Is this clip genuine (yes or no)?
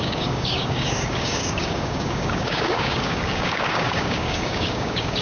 no